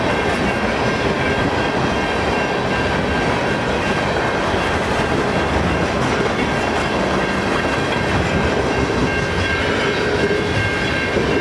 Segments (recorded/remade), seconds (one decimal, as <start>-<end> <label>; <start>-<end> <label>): 0.0-11.4 recorded